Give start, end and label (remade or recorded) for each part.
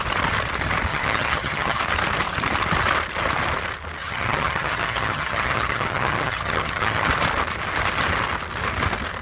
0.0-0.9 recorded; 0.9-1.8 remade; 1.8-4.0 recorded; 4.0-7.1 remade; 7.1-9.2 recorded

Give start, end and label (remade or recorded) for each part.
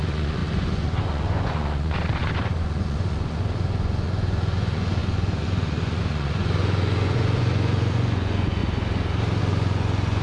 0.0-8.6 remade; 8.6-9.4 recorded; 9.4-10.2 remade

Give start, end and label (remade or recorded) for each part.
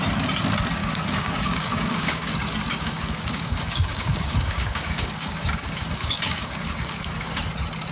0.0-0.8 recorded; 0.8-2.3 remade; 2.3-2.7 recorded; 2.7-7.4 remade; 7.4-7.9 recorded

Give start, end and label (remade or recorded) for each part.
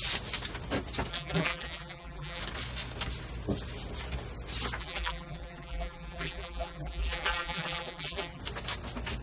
0.0-1.1 recorded; 1.1-2.4 remade; 2.4-4.8 recorded; 4.8-8.4 remade; 8.4-9.2 recorded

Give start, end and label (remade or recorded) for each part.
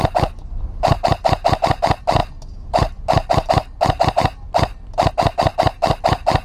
0.0-2.2 recorded; 2.2-5.1 remade; 5.1-6.4 recorded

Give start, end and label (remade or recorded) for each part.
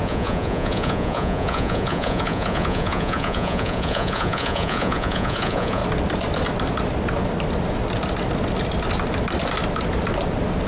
0.0-5.8 remade; 5.8-10.7 recorded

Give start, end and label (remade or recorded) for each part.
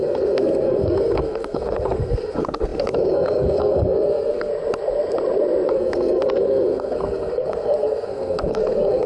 0.0-4.5 remade; 4.5-5.7 recorded; 5.7-9.1 remade